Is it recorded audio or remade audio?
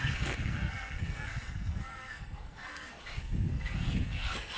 remade